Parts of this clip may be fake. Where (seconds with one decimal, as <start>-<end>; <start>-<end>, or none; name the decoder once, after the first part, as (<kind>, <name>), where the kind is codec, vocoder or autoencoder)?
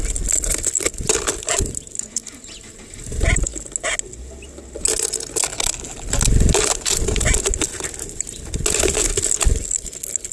none